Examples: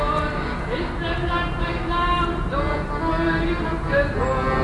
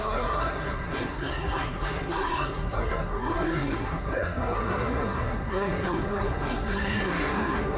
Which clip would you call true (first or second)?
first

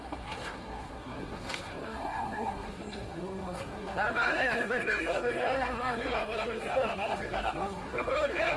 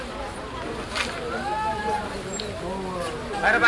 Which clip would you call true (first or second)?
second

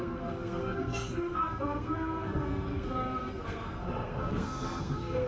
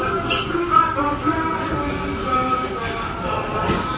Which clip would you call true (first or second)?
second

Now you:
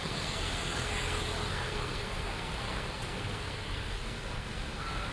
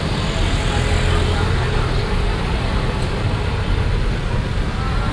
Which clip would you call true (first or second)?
second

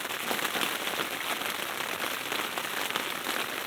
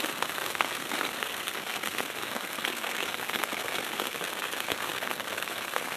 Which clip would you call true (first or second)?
first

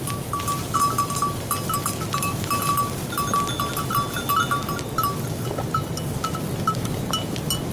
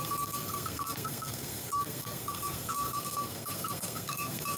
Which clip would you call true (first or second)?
first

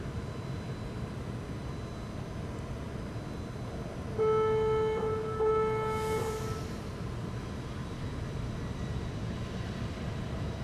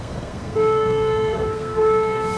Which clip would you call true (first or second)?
first